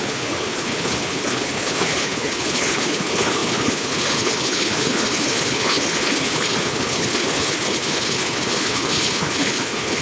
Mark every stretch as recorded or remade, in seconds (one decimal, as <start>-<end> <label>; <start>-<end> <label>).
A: 0.0-10.0 remade